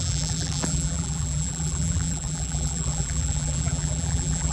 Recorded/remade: remade